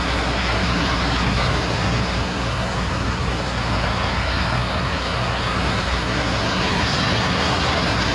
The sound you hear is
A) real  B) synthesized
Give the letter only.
B